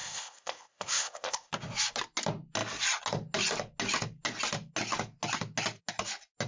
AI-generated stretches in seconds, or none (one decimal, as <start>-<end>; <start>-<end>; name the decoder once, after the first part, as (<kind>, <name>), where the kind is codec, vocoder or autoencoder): 0.0-1.5 (codec, ZipCodec)